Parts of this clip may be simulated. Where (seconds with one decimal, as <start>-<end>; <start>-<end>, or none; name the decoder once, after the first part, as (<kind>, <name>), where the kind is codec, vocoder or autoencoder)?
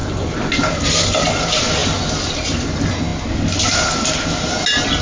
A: none